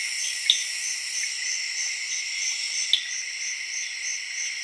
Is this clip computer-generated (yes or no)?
no